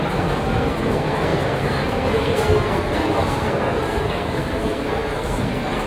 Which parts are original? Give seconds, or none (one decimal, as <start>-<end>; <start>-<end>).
none